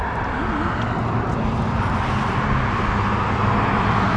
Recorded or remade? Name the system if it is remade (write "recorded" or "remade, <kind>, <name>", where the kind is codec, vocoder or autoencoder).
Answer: recorded